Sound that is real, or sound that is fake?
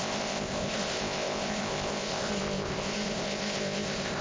fake